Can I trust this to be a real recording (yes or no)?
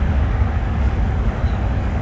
no